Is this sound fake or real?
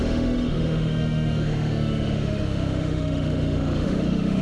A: fake